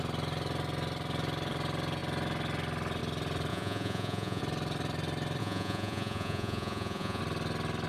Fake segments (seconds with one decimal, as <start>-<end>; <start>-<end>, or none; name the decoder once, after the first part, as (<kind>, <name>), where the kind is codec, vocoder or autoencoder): 3.5-4.4 (vocoder, Vocos); 5.4-7.2